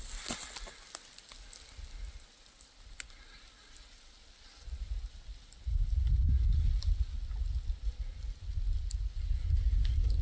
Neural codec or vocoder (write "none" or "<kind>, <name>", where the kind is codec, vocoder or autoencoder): none